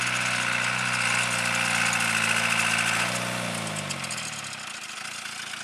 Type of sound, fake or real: real